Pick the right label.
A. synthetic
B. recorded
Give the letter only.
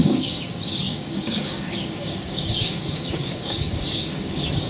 A